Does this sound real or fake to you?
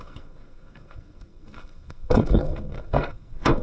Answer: fake